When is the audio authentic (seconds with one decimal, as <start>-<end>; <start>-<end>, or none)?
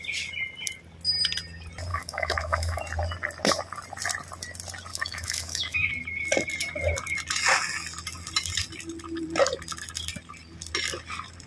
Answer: 0.0-1.9; 2.8-4.9; 5.9-11.5